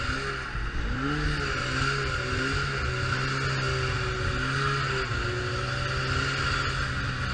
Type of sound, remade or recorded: recorded